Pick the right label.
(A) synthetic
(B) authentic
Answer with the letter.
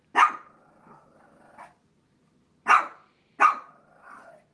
B